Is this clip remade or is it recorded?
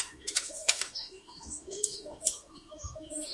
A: remade